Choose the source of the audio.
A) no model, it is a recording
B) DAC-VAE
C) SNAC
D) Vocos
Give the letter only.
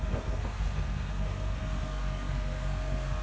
C